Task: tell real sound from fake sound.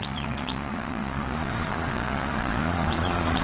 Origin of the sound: fake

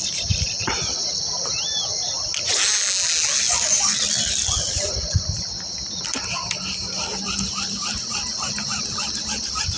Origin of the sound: real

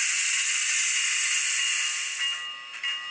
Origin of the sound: real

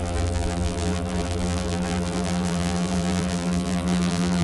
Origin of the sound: fake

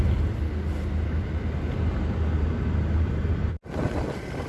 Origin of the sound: real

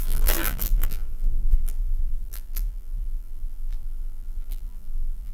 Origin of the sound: fake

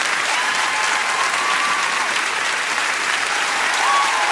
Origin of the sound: fake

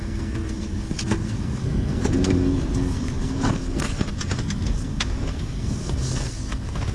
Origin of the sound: fake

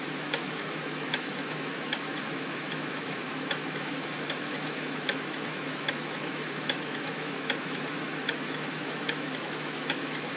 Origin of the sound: fake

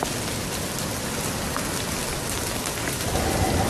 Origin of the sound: real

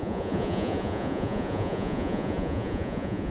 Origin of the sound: fake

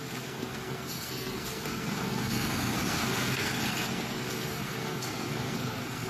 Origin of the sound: fake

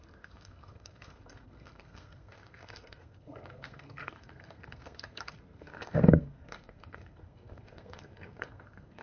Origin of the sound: fake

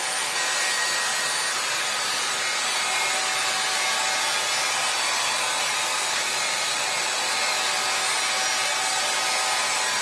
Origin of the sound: real